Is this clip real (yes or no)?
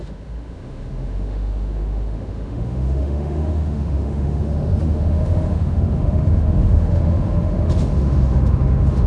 no